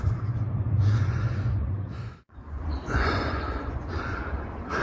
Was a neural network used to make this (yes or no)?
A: yes